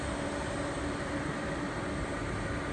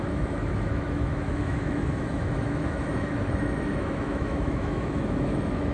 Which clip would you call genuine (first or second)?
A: first